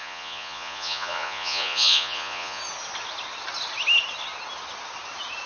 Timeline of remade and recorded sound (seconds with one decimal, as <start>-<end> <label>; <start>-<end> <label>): 0.0-2.6 remade; 2.6-5.5 recorded